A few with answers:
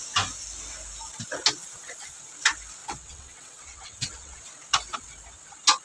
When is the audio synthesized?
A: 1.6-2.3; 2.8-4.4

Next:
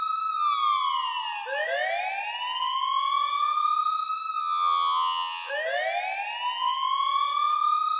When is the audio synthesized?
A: 4.4-5.5

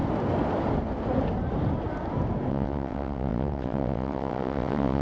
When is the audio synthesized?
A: 2.5-5.0

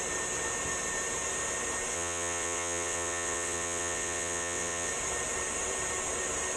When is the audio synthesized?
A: 1.9-4.9